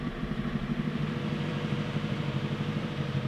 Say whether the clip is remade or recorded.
remade